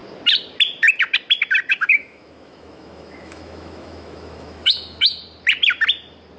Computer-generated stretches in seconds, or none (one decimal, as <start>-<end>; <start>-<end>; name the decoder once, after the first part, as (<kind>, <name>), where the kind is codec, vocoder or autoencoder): 1.7-5.2 (autoencoder, DAC-VAE)